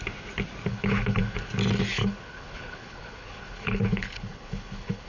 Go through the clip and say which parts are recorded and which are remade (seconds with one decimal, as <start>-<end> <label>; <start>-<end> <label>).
0.0-0.7 recorded; 0.7-1.5 remade; 1.5-1.9 recorded; 1.9-5.1 remade